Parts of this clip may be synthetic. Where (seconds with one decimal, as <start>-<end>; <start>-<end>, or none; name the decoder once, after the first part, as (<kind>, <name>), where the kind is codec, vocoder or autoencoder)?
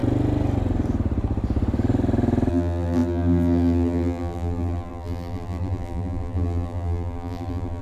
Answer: 2.5-7.8 (vocoder, BigVGAN v2)